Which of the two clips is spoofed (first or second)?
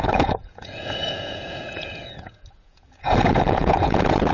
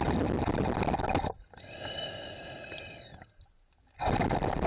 first